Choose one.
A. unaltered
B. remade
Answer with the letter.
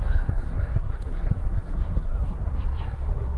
B